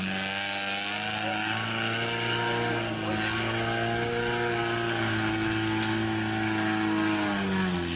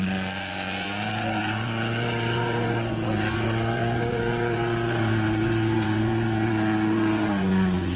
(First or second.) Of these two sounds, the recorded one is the first